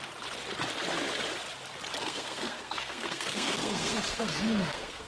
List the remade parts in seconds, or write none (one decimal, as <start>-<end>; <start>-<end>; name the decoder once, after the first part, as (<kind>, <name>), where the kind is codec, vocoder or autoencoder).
2.0-5.1 (codec, SNAC)